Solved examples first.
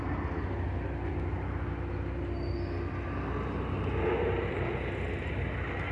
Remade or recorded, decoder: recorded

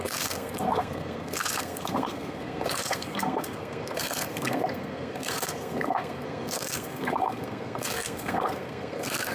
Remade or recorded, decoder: remade, codec, SNAC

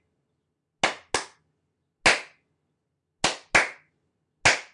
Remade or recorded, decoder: recorded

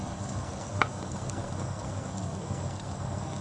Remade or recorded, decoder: remade, codec, SNAC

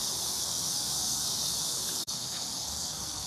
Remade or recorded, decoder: remade, codec, SNAC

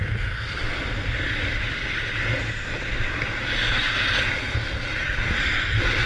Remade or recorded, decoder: recorded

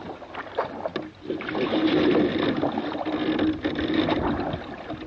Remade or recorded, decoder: recorded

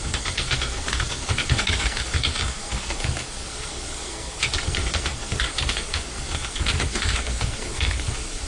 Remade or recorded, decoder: remade, codec, SNAC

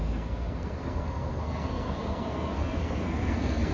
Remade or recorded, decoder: remade, codec, SNAC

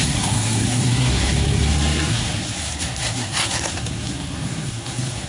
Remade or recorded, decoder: remade, codec, SNAC